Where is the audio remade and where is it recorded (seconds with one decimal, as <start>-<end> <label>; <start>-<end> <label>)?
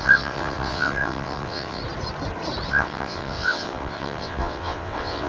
0.0-1.8 remade; 1.8-2.7 recorded; 2.7-5.3 remade